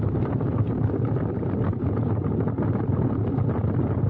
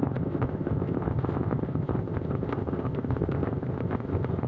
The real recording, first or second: first